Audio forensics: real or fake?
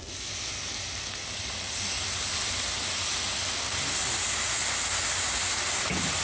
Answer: real